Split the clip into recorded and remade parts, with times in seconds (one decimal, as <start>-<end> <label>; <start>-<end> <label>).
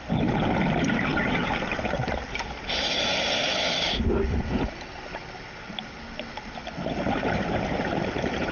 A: 0.0-8.5 recorded